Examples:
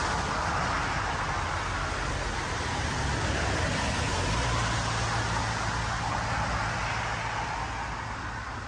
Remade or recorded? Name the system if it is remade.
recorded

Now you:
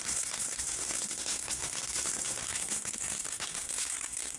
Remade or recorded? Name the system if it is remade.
remade, codec, SNAC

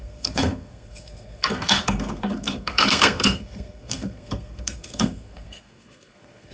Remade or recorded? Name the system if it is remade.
remade, codec, SNAC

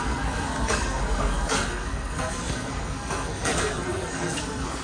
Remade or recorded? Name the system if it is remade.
remade, codec, SNAC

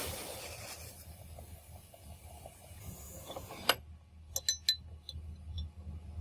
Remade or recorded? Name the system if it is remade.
recorded